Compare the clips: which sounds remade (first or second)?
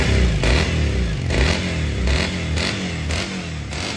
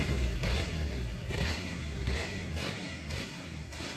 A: second